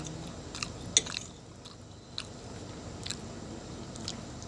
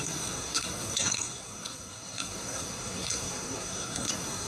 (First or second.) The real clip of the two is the first